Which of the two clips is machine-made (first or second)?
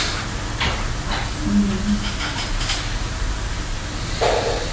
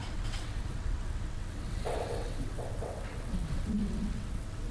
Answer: second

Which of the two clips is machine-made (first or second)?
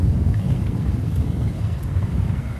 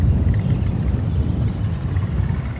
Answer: first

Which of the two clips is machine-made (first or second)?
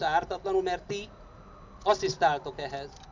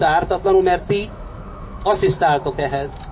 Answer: second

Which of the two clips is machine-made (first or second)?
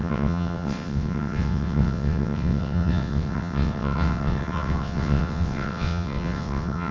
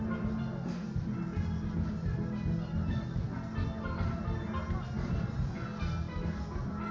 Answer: first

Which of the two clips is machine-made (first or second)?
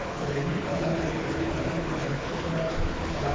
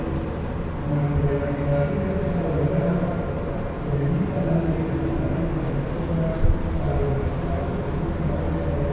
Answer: first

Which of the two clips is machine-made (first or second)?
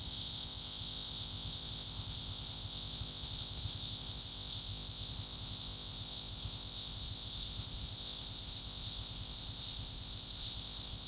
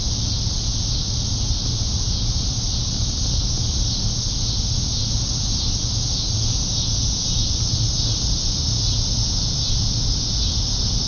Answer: first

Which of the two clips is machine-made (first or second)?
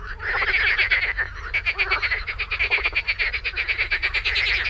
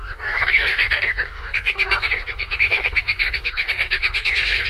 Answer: second